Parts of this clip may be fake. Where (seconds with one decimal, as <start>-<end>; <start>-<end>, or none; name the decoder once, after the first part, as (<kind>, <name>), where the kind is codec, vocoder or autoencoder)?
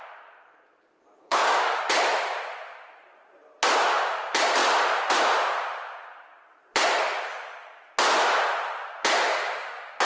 1.2-1.8 (codec, DAC); 9.3-10.1